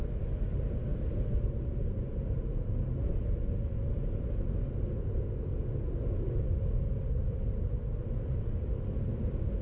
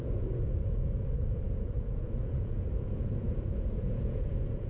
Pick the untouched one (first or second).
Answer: first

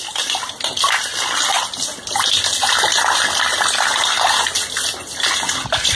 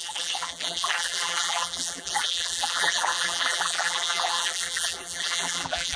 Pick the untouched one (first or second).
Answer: first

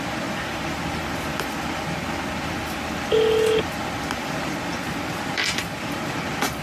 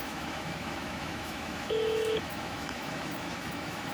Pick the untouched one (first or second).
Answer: first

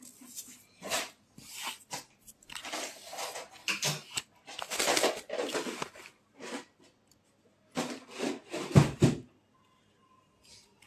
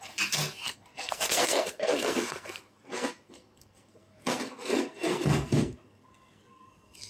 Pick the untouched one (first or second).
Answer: first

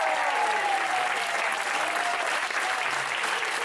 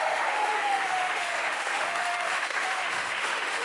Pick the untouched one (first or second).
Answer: first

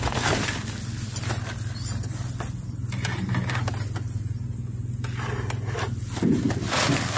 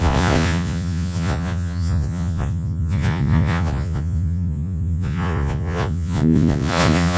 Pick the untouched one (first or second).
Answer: first